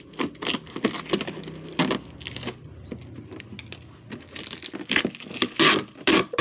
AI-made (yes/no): no